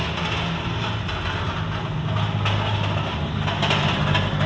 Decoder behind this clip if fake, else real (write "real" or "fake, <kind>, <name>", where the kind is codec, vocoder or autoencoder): real